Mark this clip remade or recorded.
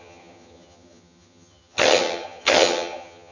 remade